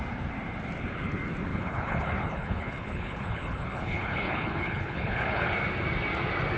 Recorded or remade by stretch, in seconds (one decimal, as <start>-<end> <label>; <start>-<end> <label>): 0.0-1.5 recorded; 1.5-5.5 remade; 5.5-6.6 recorded